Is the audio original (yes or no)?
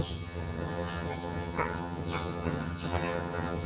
no